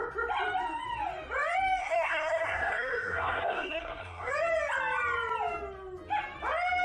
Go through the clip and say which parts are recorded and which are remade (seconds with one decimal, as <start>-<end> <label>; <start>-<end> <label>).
0.0-1.8 recorded; 1.8-4.3 remade; 4.3-6.8 recorded